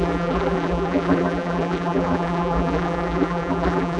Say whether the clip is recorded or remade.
remade